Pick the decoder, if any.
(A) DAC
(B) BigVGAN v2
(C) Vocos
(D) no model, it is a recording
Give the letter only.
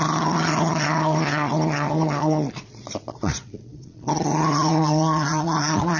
C